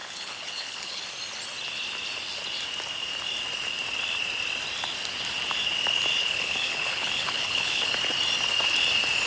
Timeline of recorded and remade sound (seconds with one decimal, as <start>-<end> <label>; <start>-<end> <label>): 0.0-1.0 remade; 1.0-6.2 recorded; 6.2-7.9 remade; 7.9-9.3 recorded